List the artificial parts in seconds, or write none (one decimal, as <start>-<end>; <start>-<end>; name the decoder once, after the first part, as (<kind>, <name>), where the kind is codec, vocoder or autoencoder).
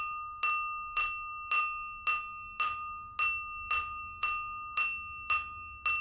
none